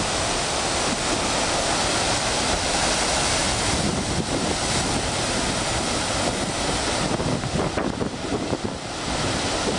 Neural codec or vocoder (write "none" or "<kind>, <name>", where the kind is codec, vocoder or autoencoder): none